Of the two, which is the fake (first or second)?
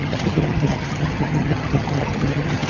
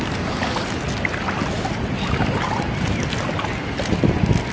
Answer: first